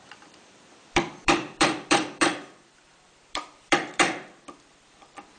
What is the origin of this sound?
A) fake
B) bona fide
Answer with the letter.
A